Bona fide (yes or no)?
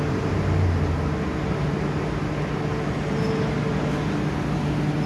yes